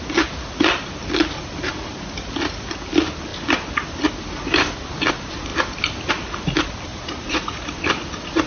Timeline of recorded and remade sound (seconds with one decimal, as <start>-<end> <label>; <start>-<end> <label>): 0.0-6.9 recorded; 6.9-7.8 remade; 7.8-8.5 recorded